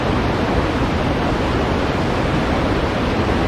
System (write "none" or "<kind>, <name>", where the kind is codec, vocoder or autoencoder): none